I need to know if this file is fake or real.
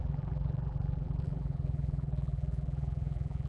fake